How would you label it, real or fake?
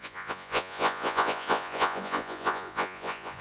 fake